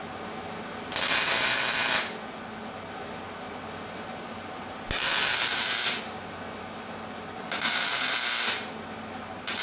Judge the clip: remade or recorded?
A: recorded